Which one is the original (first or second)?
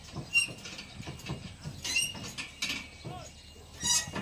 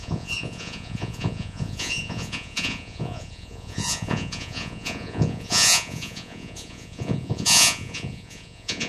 first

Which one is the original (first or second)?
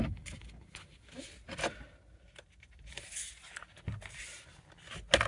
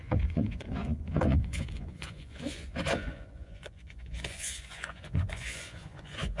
first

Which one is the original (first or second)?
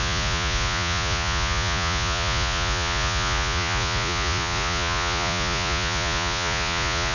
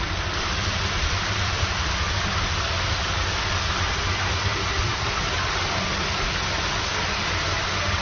second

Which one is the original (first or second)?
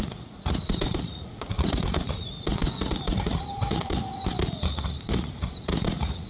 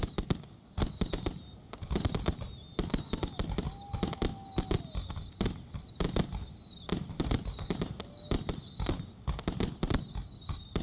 second